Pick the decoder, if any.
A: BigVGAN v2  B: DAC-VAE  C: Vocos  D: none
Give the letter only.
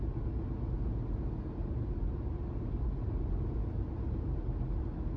D